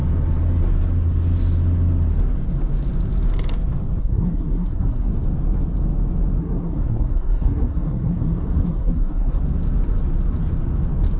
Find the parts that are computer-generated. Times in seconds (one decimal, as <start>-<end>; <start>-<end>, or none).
4.0-5.1; 6.4-9.4